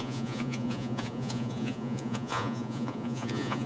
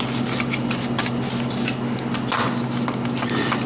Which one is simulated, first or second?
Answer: first